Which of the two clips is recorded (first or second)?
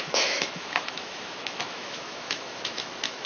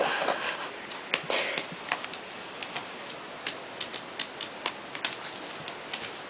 second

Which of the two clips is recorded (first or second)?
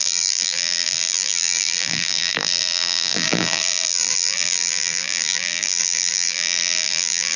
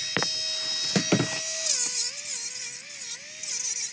second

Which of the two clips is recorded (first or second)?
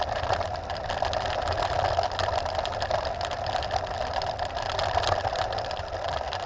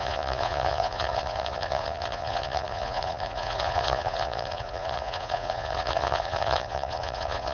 first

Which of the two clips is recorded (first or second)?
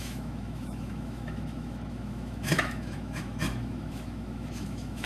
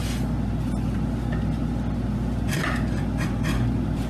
second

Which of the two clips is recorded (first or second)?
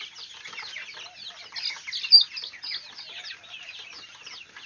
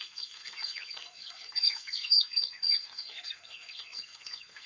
first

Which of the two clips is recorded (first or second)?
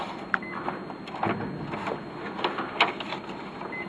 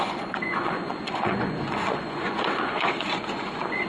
first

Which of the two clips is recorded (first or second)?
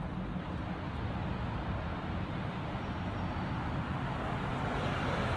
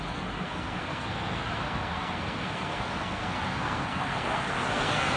first